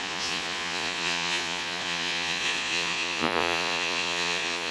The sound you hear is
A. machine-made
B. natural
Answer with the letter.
A